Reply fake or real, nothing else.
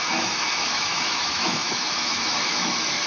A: fake